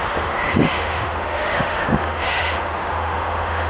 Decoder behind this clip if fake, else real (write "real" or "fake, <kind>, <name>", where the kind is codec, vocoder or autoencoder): fake, autoencoder, DAC-VAE